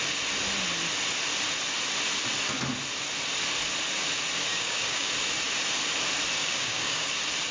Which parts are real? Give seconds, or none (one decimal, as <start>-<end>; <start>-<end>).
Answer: 0.0-4.5; 5.1-6.4; 7.1-7.5